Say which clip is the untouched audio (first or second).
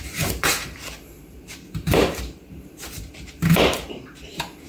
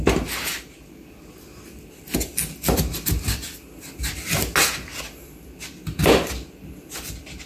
second